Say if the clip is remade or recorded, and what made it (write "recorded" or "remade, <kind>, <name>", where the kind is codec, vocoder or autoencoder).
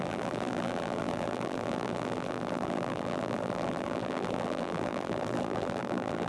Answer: remade, vocoder, BigVGAN v2